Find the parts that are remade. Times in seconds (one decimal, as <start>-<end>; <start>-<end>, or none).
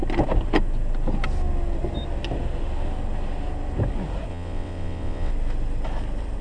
4.3-5.3